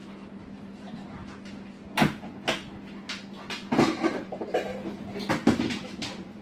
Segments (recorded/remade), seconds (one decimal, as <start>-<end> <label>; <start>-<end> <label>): 0.0-0.6 recorded; 0.6-1.2 remade; 1.2-3.8 recorded; 3.8-4.7 remade; 4.7-5.3 recorded; 5.3-6.4 remade